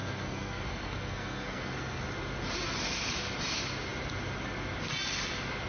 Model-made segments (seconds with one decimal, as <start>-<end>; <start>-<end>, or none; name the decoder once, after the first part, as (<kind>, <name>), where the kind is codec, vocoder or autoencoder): 0.0-2.0 (codec, SNAC)